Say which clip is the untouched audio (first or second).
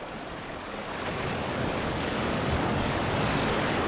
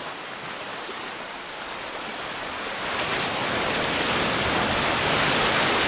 second